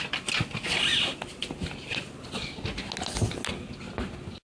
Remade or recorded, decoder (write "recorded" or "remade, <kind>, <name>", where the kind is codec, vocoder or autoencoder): recorded